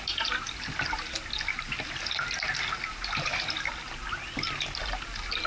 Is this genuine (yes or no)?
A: yes